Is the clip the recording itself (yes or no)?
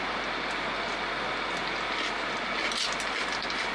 yes